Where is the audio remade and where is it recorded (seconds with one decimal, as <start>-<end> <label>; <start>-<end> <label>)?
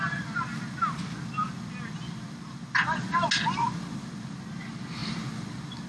0.0-5.9 recorded